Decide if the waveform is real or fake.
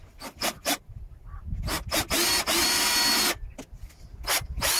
real